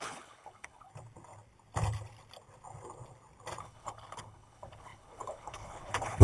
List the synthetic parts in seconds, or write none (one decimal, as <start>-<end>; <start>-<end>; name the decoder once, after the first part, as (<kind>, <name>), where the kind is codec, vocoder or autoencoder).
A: 0.0-0.9 (codec, HILCodec); 3.6-6.2